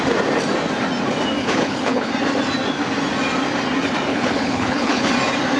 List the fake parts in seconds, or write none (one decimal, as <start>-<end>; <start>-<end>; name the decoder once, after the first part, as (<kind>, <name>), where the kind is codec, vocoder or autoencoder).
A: 1.4-2.1 (codec, HILCodec); 4.1-5.1